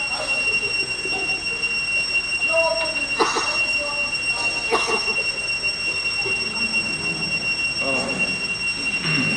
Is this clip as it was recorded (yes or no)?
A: yes